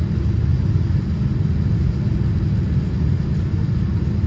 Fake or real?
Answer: real